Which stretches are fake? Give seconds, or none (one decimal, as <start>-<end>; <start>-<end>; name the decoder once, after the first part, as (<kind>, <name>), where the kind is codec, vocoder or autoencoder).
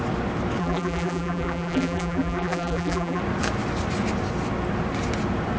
0.6-3.2 (vocoder, BigVGAN v2)